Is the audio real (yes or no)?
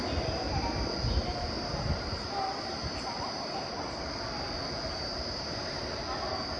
yes